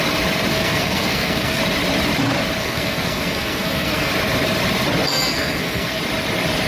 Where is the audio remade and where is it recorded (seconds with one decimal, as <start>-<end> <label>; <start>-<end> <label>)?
0.0-0.5 recorded; 0.5-1.6 remade; 1.6-2.6 recorded; 2.6-4.1 remade; 4.1-5.1 recorded; 5.1-6.0 remade; 6.0-6.7 recorded